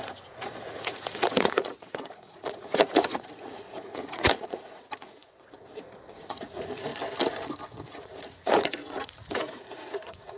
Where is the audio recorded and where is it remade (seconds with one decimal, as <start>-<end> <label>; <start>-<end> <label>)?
0.0-6.9 remade; 6.9-7.9 recorded; 7.9-10.4 remade